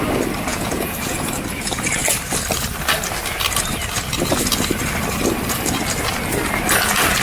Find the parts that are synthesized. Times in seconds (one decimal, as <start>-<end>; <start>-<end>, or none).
0.5-1.3